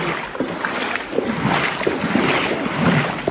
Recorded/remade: recorded